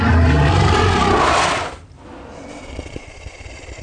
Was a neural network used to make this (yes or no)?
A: no